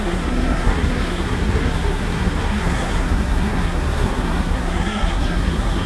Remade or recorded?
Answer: remade